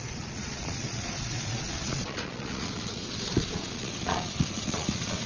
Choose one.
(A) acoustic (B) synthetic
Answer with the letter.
B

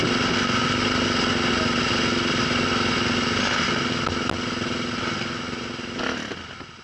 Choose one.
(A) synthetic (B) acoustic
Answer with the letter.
B